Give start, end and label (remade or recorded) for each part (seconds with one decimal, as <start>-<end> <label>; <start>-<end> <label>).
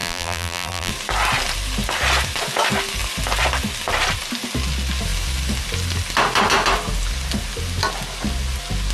0.0-0.9 remade; 0.9-8.9 recorded